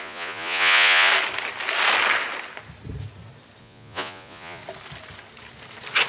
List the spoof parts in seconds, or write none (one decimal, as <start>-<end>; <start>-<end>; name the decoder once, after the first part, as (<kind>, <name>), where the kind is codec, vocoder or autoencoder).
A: 0.0-1.1 (vocoder, Vocos); 3.6-4.6